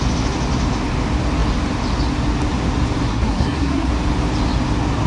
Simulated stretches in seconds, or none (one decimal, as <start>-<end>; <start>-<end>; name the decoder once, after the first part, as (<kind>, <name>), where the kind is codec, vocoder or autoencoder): 3.1-3.9 (codec, SNAC)